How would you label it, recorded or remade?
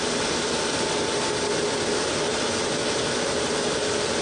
recorded